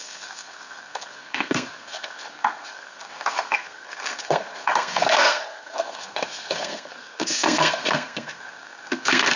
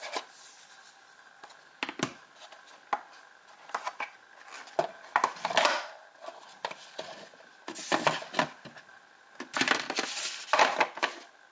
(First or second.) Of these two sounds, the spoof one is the first